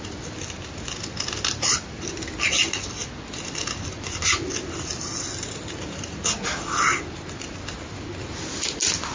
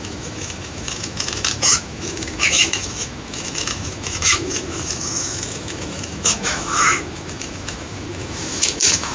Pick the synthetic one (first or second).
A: second